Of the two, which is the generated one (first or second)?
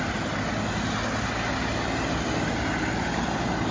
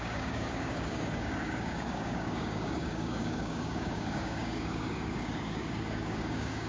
second